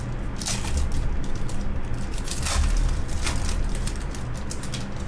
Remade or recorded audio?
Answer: recorded